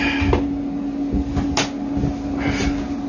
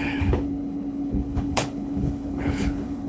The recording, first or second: first